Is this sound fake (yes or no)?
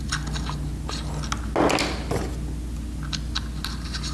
no